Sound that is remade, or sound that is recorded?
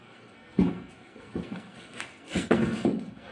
remade